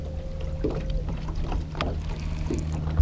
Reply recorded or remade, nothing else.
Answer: recorded